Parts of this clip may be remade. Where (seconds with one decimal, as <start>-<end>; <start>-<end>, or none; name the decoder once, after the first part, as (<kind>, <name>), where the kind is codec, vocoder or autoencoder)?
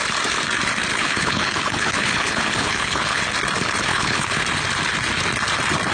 0.9-3.2 (codec, HILCodec); 3.9-4.4